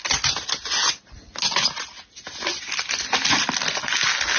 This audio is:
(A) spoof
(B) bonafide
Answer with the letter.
B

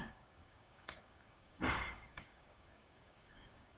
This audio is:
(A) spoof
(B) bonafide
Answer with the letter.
A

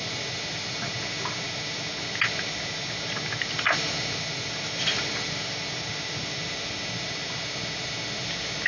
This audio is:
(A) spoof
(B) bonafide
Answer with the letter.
B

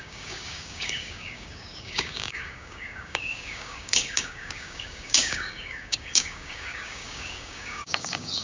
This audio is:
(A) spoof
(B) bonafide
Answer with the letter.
A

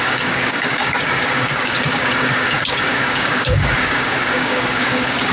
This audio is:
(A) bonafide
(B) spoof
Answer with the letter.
B